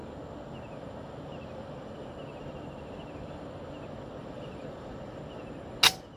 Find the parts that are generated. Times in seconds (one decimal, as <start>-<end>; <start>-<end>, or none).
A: 4.2-5.2